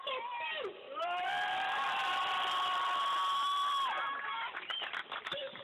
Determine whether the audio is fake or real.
fake